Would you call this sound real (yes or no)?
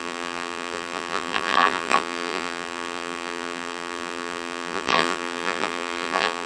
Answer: no